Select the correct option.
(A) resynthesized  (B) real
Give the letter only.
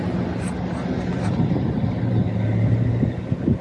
B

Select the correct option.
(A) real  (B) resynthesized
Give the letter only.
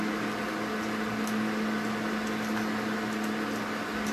A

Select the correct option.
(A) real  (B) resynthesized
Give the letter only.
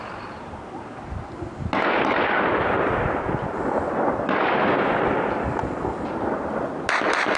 A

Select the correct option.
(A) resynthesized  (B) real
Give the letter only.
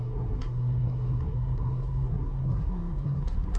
A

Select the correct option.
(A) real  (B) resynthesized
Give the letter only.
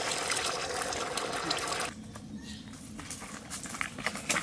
A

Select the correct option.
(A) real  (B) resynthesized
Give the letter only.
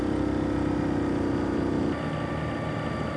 A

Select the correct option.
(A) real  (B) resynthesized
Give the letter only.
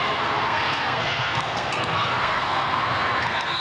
B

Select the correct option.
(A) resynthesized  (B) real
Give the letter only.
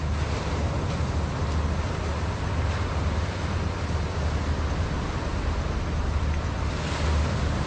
B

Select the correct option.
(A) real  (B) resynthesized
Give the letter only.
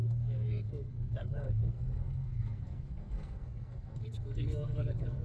B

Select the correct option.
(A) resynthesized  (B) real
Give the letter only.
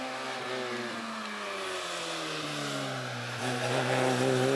B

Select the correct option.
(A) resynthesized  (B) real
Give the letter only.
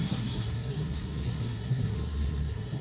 A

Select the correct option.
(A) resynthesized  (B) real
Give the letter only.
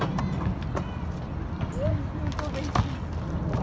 B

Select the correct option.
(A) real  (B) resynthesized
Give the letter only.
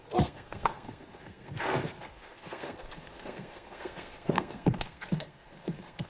B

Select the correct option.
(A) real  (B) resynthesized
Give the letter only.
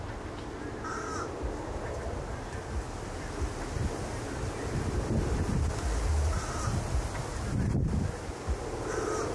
A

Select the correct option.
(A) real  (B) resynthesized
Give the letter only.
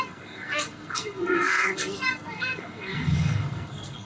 B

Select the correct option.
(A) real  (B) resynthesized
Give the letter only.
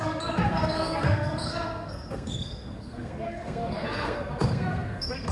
B